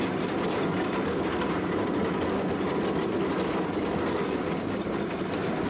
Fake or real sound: real